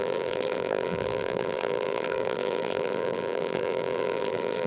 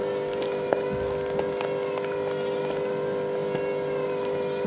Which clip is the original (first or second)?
second